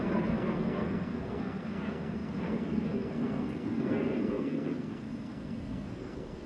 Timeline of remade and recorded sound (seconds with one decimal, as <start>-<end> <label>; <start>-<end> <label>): 0.0-6.5 remade